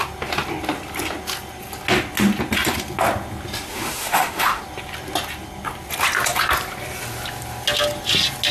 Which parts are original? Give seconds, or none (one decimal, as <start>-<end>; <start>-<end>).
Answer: 0.0-3.7; 4.6-8.5